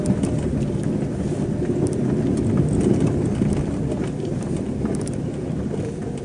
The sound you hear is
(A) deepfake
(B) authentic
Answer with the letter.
B